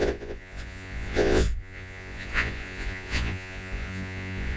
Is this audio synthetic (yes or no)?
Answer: yes